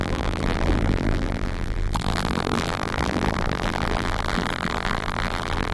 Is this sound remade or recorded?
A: remade